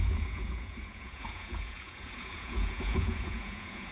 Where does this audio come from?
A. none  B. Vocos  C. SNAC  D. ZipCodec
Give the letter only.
B